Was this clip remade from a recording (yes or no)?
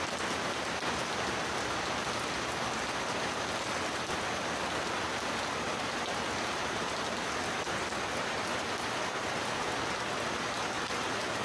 no